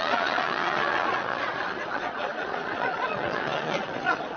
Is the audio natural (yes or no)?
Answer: no